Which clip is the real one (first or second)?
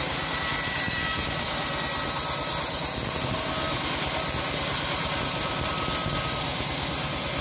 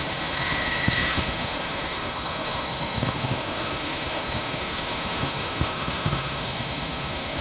first